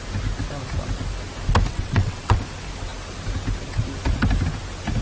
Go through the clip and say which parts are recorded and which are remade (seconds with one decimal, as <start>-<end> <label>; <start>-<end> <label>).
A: 0.0-1.7 recorded; 1.7-2.4 remade; 2.4-5.0 recorded